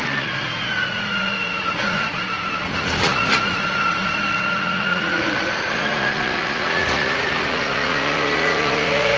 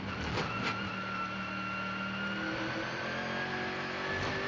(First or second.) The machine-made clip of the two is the first